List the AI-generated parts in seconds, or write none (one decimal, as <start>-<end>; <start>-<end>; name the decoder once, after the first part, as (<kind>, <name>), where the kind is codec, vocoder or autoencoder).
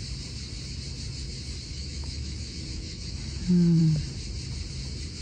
1.7-3.8 (autoencoder, DAC-VAE)